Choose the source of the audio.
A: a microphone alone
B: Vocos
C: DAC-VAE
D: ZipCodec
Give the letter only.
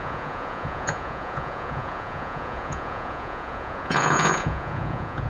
B